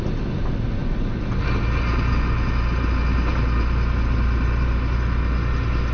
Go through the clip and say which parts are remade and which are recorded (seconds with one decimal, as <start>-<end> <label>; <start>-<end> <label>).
0.0-5.9 recorded